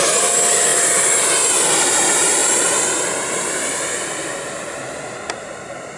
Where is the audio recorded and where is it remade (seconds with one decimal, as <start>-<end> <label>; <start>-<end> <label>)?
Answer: 0.0-0.7 remade; 0.7-1.9 recorded; 1.9-4.8 remade; 4.8-5.4 recorded; 5.4-6.0 remade